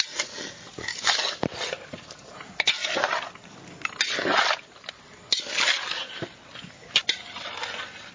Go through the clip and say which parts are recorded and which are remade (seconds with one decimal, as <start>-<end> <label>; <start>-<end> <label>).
0.0-8.1 recorded

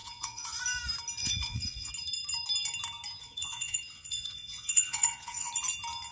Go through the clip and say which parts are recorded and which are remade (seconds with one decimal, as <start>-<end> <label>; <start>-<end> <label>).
0.0-0.6 remade; 0.6-1.2 recorded; 1.2-1.9 remade; 1.9-3.2 recorded; 3.2-5.5 remade; 5.5-6.1 recorded